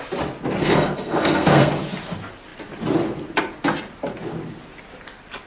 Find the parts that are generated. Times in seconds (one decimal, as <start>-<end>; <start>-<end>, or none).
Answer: 0.6-1.7